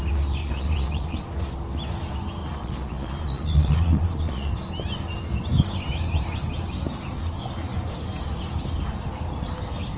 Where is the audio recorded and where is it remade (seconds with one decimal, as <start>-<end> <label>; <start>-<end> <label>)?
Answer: 0.0-0.4 recorded; 0.4-1.2 remade; 1.2-2.4 recorded; 2.4-4.5 remade; 4.5-10.0 recorded